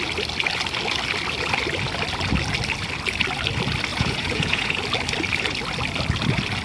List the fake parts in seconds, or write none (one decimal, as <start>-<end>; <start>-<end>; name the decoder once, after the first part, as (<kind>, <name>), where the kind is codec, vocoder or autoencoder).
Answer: 3.9-4.8 (vocoder, Vocos)